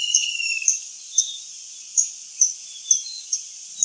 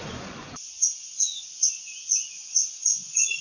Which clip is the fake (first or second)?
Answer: second